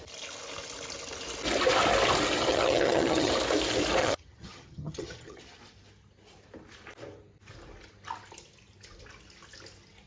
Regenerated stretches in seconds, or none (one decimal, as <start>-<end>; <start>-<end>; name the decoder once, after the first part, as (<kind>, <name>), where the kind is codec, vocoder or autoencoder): 2.5-3.3 (vocoder, HiFi-GAN); 4.0-5.4